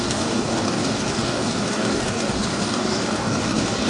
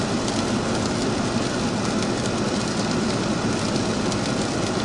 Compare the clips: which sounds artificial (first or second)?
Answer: first